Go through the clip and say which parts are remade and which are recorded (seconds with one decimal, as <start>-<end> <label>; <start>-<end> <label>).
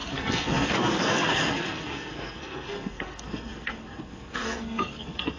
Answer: 0.0-5.4 remade